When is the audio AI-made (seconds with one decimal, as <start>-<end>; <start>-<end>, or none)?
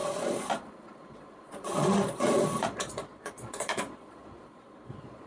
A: 0.0-5.3